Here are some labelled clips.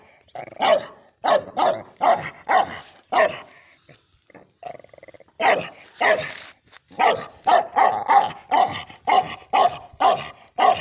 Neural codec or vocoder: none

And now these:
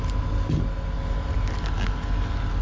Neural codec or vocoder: none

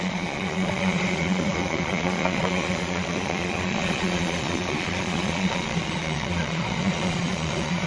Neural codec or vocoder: vocoder, Vocos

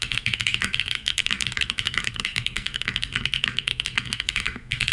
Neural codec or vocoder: codec, SNAC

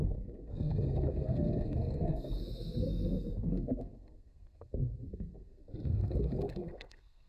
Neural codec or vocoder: codec, SNAC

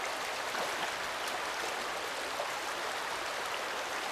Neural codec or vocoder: none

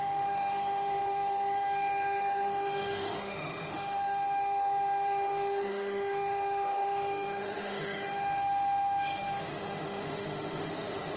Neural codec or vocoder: autoencoder, DAC-VAE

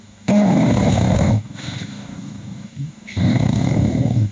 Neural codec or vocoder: codec, DAC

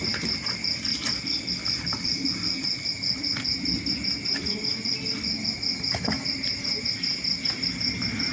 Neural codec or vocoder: none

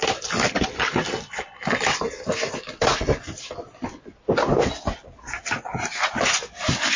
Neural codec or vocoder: none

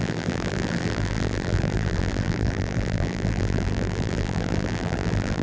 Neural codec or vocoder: vocoder, BigVGAN v2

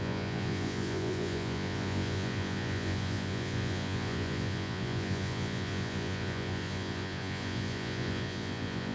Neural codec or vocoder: vocoder, Vocos